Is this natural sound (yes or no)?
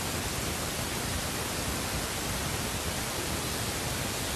yes